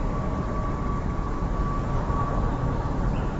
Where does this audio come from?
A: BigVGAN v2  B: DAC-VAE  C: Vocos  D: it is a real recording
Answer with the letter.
D